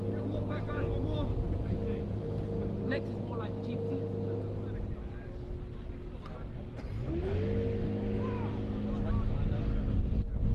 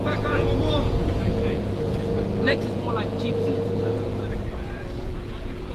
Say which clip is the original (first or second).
first